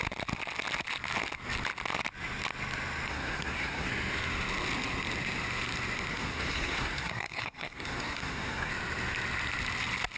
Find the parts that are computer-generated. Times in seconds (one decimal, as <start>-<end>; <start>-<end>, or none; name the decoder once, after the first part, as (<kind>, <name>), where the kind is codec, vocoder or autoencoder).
3.1-3.9 (codec, SNAC); 6.1-8.7